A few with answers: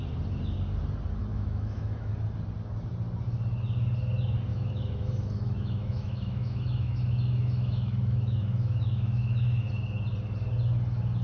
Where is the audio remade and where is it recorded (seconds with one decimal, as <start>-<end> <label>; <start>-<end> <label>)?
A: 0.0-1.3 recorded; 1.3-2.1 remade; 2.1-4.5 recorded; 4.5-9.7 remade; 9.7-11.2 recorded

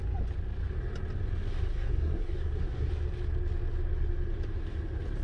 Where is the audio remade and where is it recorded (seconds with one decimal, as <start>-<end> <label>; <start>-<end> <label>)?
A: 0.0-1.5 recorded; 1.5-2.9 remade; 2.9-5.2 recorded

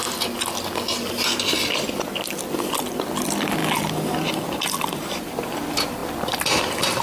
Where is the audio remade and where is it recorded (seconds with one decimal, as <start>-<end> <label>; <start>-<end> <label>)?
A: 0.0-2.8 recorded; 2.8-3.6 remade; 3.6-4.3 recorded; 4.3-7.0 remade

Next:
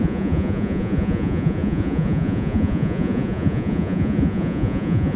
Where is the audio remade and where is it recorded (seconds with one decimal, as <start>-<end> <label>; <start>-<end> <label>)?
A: 0.0-5.2 remade

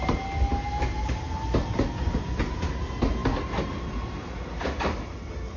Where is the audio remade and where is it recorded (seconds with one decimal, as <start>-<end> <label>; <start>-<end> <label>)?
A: 0.0-5.6 recorded

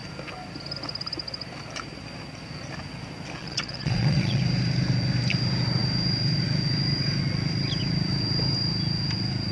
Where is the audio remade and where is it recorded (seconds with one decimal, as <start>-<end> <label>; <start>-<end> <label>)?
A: 0.0-3.4 recorded; 3.4-4.4 remade; 4.4-9.5 recorded

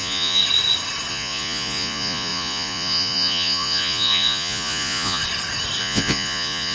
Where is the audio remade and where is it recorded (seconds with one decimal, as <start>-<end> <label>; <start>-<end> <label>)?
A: 0.0-0.4 remade; 0.4-1.1 recorded; 1.1-5.2 remade; 5.2-5.8 recorded; 5.8-6.7 remade

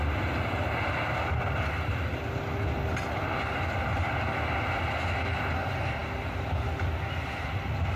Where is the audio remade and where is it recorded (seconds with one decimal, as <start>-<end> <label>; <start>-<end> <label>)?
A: 0.0-8.0 recorded